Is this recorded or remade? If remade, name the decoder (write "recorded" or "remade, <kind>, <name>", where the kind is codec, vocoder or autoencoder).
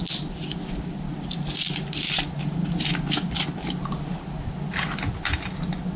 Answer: recorded